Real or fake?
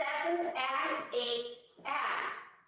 fake